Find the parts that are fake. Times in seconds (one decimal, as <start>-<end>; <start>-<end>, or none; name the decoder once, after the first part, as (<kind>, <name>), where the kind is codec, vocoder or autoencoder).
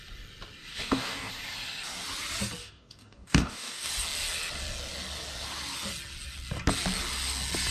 0.7-1.3 (codec, DAC); 2.6-3.9